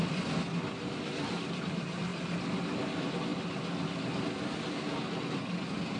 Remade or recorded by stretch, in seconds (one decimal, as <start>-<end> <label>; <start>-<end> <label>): 0.0-6.0 recorded

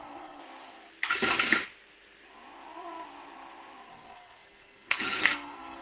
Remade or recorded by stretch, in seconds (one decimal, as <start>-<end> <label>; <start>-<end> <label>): 0.0-0.4 remade; 0.4-3.9 recorded; 3.9-5.8 remade

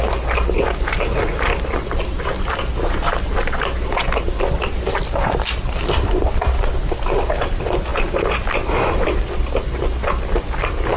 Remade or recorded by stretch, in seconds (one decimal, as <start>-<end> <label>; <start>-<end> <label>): 0.0-11.0 recorded

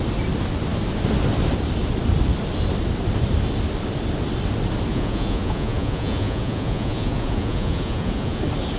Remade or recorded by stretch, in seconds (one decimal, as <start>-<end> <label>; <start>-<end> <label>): 0.0-4.9 recorded; 4.9-8.4 remade; 8.4-8.8 recorded

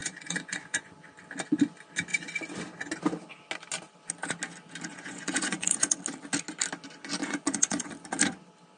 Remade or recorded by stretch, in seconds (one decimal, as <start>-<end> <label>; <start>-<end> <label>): 0.0-1.0 remade; 1.0-4.9 recorded; 4.9-6.0 remade; 6.0-7.2 recorded; 7.2-7.9 remade; 7.9-8.8 recorded

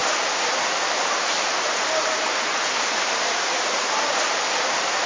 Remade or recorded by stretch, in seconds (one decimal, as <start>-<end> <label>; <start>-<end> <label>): 0.0-0.6 recorded; 0.6-5.1 remade

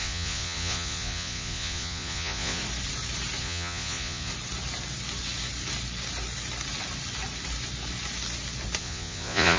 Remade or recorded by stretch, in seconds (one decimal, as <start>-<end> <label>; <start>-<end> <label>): 0.0-2.6 remade; 2.6-3.4 recorded; 3.4-4.3 remade; 4.3-8.8 recorded; 8.8-9.6 remade

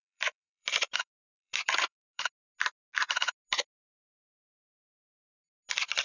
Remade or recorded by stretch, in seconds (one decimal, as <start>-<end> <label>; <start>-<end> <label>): 0.0-2.3 remade; 2.3-6.0 recorded